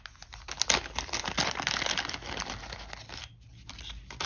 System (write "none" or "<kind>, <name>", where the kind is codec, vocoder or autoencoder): none